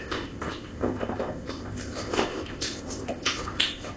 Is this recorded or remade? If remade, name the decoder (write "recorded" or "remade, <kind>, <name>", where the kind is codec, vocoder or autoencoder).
remade, codec, ZipCodec